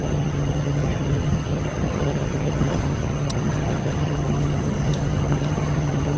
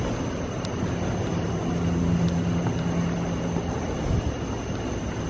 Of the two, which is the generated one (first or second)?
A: first